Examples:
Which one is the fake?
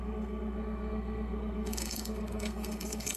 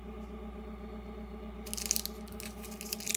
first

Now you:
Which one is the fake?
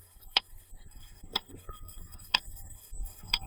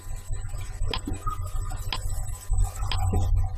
first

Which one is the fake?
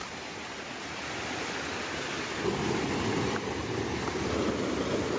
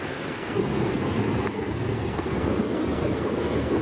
second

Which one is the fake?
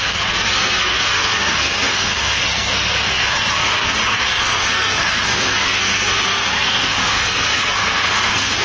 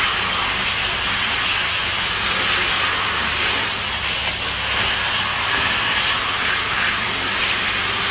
first